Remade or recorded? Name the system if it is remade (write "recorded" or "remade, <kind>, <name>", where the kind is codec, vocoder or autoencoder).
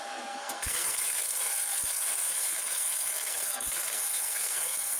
remade, codec, SNAC